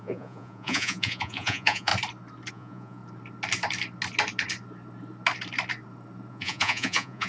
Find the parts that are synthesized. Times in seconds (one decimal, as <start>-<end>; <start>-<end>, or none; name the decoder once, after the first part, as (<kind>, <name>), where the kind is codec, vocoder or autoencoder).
0.0-1.9 (vocoder, Vocos); 2.5-3.0; 6.3-7.3